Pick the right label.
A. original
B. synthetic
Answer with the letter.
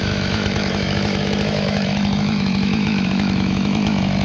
B